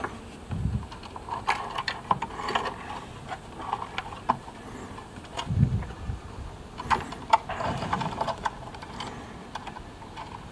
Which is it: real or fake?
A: real